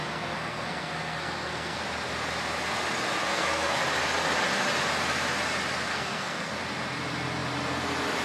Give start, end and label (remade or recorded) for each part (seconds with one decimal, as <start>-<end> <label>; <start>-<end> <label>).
0.0-1.8 remade; 1.8-3.3 recorded; 3.3-3.8 remade; 3.8-5.9 recorded; 5.9-6.6 remade; 6.6-8.2 recorded